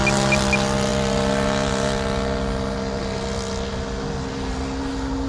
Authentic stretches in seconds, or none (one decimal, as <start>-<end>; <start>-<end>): 0.0-5.3